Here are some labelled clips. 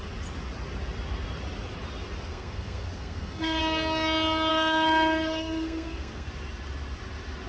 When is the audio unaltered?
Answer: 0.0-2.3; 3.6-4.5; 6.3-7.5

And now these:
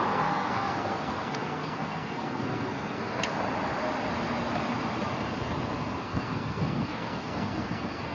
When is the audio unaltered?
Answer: 3.3-6.0

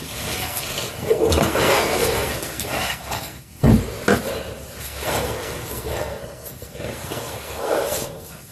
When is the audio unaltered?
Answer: 3.7-4.8

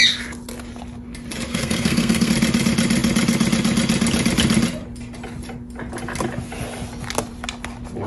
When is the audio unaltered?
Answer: 0.0-1.5; 2.3-8.1

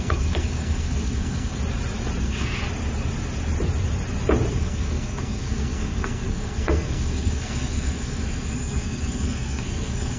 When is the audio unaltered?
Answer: 1.5-2.2; 2.6-4.5